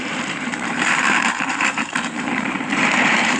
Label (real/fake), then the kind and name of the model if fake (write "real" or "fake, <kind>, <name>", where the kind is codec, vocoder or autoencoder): fake, vocoder, BigVGAN v2